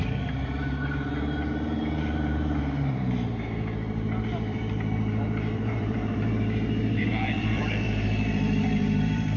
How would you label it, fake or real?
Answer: fake